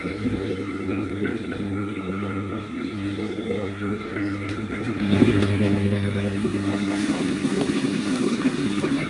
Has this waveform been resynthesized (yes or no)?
yes